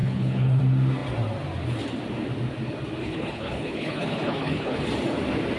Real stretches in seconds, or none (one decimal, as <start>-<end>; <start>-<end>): 0.6-3.0; 4.8-5.6